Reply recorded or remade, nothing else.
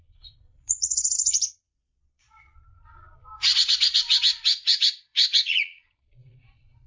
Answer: remade